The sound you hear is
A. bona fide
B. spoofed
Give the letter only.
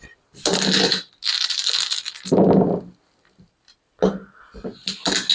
A